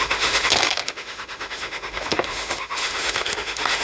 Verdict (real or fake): fake